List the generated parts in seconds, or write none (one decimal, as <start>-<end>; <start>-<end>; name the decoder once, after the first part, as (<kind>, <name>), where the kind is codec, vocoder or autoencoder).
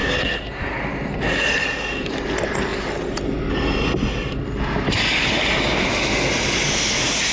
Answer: none